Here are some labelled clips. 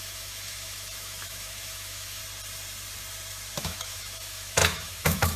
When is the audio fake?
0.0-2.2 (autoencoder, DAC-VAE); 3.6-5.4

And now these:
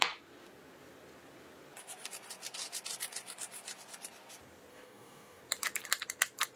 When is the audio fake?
4.7-5.4 (codec, DAC)

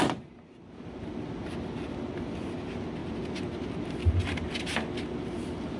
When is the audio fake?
none